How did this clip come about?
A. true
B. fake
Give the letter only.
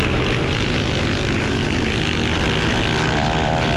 A